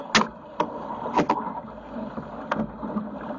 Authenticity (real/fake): real